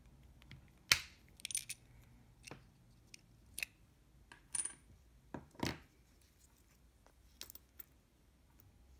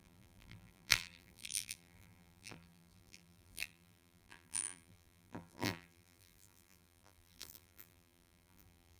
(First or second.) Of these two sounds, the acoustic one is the first